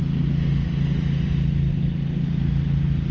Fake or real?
real